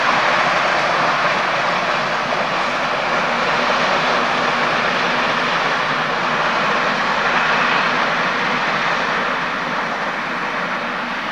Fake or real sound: real